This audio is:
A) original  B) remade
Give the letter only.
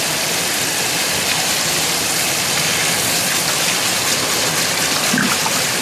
B